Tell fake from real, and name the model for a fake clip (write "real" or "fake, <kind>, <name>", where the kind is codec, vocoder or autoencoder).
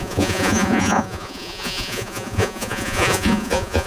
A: fake, vocoder, Vocos